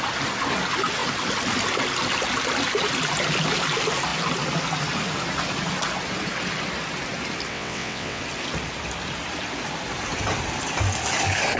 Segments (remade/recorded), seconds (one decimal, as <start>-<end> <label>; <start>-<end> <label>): 0.0-7.5 recorded; 7.5-8.2 remade; 8.2-11.6 recorded